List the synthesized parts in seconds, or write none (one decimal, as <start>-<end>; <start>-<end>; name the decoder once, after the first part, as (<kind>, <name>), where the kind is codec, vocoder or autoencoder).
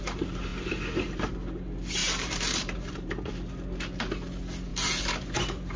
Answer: 2.0-3.3 (vocoder, BigVGAN v2); 4.7-5.8